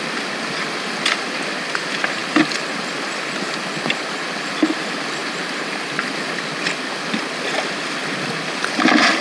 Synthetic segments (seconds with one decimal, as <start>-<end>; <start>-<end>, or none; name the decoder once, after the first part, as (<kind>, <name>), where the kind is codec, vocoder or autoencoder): 5.2-6.0 (vocoder, BigVGAN v2)

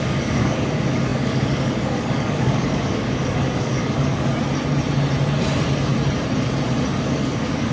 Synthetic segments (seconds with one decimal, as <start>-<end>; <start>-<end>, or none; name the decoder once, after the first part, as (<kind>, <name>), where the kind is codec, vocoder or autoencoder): 0.0-4.3 (codec, DAC); 7.0-7.7

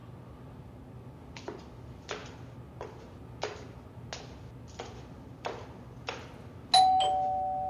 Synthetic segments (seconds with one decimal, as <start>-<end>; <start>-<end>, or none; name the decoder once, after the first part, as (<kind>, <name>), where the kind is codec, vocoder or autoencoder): none

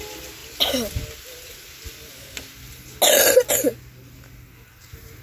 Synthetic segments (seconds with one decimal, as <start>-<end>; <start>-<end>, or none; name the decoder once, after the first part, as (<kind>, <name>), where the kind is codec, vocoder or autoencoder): none

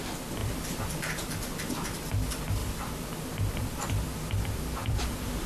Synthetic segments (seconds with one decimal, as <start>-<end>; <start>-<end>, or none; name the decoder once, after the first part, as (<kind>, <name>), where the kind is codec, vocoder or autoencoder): 0.4-1.1 (vocoder, BigVGAN v2); 2.6-3.9; 4.8-5.5

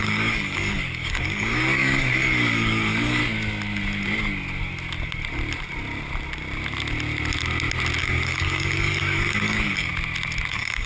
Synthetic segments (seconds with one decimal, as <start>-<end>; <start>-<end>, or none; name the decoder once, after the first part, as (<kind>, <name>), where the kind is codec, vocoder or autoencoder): 0.0-3.2 (codec, DAC); 8.0-9.9; 10.5-10.9

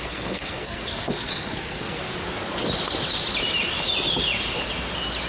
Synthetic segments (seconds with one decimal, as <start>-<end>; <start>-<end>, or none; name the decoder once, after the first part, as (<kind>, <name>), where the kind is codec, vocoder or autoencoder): 0.0-2.1 (codec, SNAC)

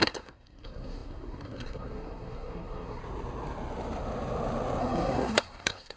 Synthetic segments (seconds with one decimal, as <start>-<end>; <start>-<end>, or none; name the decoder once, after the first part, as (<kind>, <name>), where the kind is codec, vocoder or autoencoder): 0.0-3.0 (codec, SNAC); 4.8-6.0